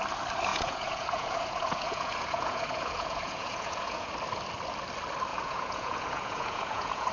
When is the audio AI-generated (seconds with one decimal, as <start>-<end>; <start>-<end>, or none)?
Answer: 0.5-4.1; 5.3-7.1